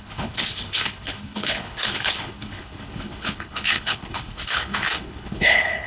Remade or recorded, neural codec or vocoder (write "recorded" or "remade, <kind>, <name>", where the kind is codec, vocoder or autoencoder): remade, codec, HILCodec